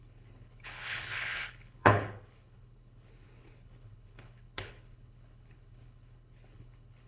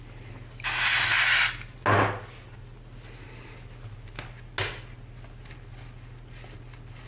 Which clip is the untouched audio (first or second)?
second